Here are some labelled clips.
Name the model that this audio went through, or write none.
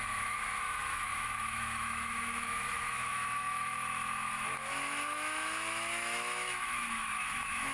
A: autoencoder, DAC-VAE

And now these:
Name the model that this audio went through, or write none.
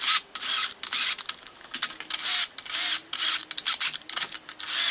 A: none